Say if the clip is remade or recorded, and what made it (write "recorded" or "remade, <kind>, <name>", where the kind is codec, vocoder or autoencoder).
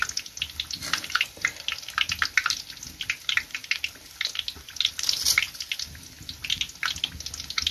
recorded